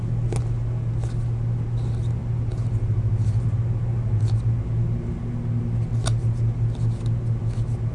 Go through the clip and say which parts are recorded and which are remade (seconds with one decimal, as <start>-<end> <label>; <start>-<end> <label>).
0.0-7.9 recorded